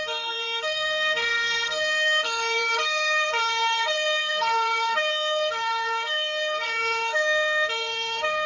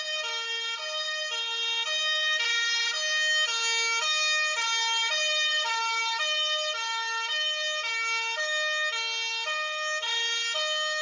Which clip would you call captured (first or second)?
second